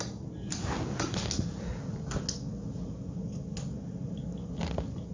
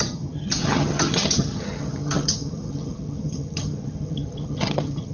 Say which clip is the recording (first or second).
first